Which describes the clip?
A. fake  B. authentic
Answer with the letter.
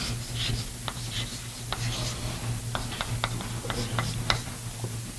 B